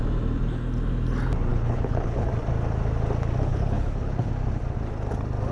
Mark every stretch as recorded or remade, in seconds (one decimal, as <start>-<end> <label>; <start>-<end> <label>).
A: 0.0-1.5 recorded; 1.5-2.3 remade; 2.3-3.5 recorded; 3.5-4.3 remade; 4.3-5.5 recorded